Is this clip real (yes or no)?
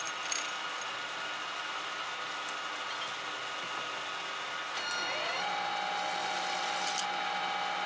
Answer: yes